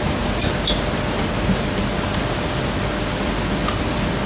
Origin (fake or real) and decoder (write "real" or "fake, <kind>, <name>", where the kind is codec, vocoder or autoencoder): real